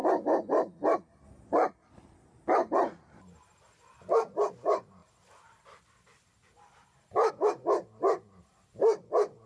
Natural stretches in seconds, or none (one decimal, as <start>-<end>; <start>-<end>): 0.0-9.5